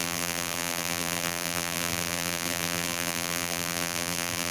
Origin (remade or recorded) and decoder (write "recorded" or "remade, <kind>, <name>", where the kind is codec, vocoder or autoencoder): remade, vocoder, BigVGAN v2